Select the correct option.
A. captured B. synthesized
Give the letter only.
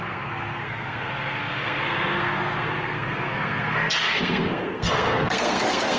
B